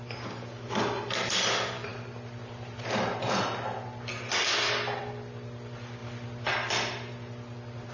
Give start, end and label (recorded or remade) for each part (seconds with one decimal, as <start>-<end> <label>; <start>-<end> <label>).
0.0-7.9 recorded